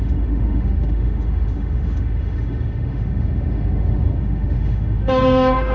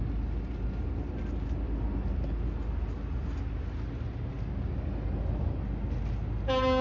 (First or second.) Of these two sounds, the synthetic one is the first